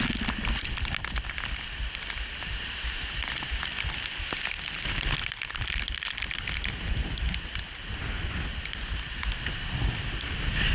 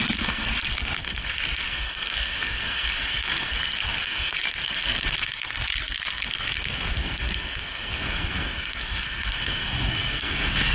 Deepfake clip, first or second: second